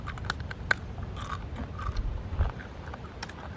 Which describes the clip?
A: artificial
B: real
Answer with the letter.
B